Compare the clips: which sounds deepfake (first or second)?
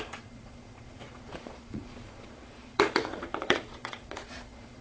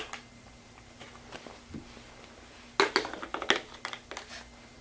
first